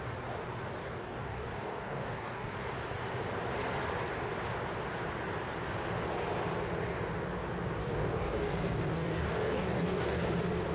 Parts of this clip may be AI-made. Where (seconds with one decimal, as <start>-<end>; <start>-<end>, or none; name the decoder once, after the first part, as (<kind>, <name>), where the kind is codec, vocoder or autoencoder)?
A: 0.8-2.5 (codec, DAC); 7.8-10.2